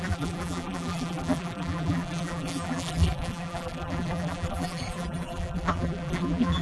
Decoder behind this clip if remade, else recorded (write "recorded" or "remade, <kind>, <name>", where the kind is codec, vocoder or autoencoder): remade, vocoder, BigVGAN v2